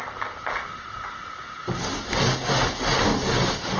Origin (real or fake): real